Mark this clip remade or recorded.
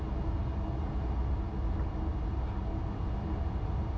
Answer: recorded